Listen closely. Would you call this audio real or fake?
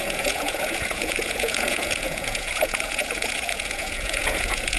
fake